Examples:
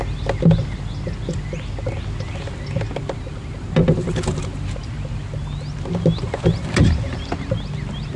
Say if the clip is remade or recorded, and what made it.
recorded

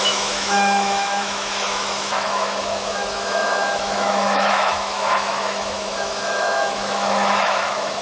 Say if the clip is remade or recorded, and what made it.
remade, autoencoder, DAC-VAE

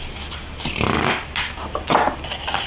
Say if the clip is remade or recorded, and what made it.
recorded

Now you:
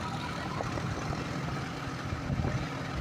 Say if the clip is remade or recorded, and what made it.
recorded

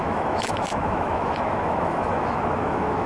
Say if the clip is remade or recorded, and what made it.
remade, autoencoder, DAC-VAE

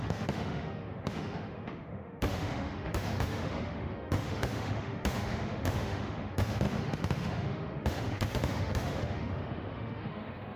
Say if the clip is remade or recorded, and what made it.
remade, autoencoder, DAC-VAE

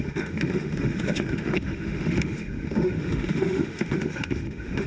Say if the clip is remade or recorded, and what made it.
remade, autoencoder, DAC-VAE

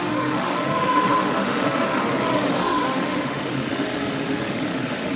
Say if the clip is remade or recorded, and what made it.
remade, autoencoder, DAC-VAE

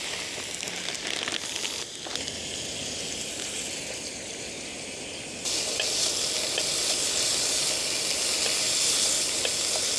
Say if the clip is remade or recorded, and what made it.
recorded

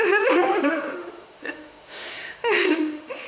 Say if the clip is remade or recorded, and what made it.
remade, autoencoder, DAC-VAE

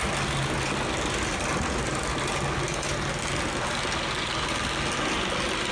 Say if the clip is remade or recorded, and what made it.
recorded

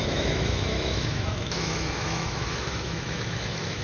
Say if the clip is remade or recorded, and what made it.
remade, autoencoder, DAC-VAE